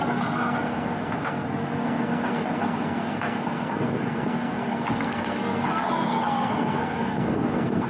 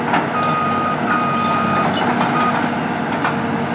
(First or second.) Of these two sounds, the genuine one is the second